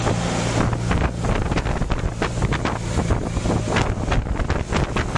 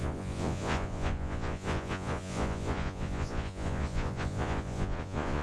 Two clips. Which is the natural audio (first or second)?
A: first